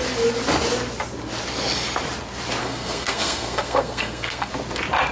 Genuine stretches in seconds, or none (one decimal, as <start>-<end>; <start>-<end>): 0.0-2.6; 4.5-5.1